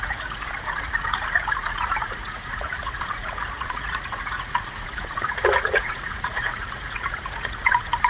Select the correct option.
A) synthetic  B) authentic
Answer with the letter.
A